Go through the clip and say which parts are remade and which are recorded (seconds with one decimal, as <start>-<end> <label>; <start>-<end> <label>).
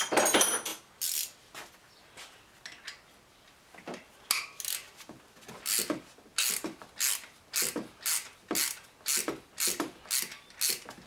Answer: 0.0-11.1 recorded